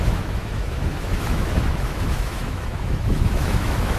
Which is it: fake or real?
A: fake